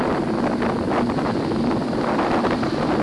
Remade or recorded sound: recorded